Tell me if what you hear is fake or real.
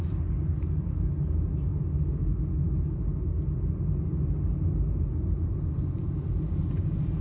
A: real